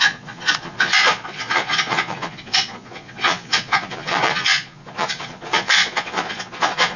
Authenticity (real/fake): fake